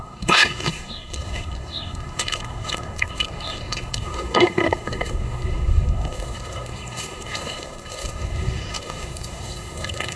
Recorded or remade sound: remade